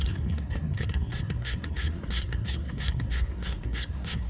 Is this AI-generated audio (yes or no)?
yes